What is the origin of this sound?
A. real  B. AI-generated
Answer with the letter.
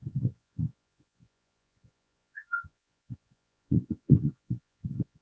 B